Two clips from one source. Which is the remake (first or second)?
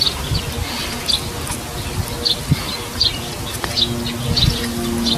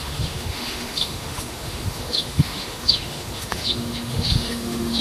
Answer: second